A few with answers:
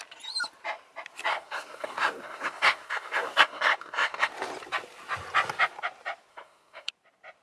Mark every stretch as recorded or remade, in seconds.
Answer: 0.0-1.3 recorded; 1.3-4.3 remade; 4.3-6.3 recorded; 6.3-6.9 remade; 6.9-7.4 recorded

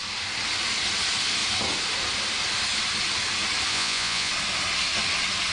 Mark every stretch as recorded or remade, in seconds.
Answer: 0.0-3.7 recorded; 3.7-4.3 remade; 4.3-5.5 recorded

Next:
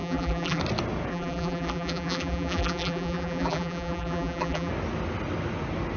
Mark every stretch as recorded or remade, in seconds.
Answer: 0.0-0.6 remade; 0.6-1.1 recorded; 1.1-4.7 remade; 4.7-6.0 recorded

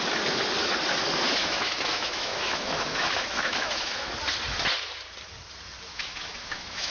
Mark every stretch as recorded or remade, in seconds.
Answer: 0.0-1.4 recorded; 1.4-4.1 remade; 4.1-5.9 recorded; 5.9-6.9 remade

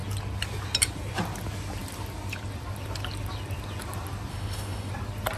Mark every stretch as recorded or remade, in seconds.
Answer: 0.0-4.3 recorded; 4.3-4.9 remade; 4.9-5.4 recorded

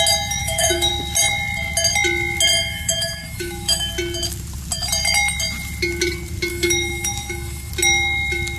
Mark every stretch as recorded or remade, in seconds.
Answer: 0.0-0.4 recorded; 0.4-0.9 remade; 0.9-2.6 recorded; 2.6-3.9 remade; 3.9-6.5 recorded; 6.5-7.7 remade; 7.7-8.6 recorded

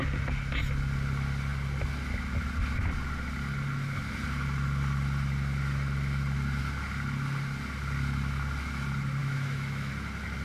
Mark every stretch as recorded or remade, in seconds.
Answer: 0.0-9.2 recorded; 9.2-9.9 remade; 9.9-10.4 recorded